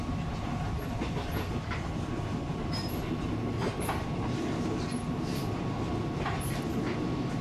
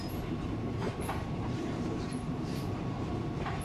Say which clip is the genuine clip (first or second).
first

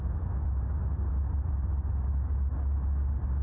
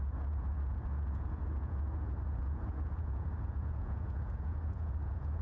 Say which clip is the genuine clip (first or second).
first